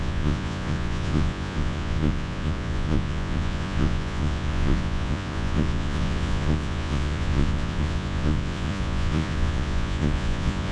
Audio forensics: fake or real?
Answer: fake